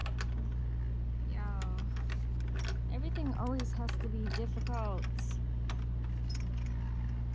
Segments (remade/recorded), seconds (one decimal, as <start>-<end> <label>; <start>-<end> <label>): 0.0-7.3 recorded